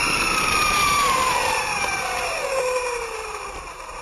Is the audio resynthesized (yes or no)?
yes